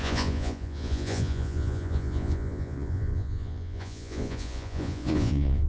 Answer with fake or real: fake